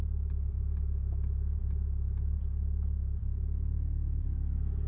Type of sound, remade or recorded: recorded